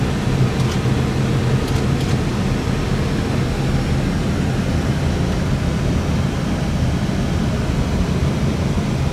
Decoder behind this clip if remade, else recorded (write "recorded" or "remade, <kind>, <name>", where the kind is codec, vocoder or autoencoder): recorded